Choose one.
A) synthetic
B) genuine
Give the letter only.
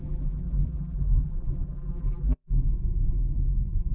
A